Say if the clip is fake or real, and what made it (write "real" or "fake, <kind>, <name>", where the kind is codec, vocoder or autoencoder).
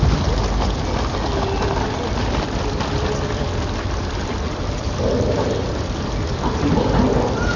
real